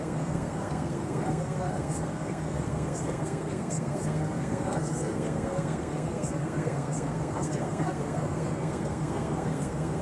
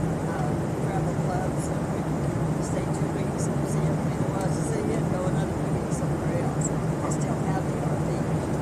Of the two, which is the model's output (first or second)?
first